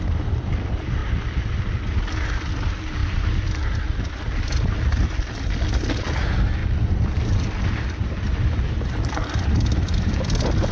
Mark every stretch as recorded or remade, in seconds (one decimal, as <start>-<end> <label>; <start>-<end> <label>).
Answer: 0.0-10.7 recorded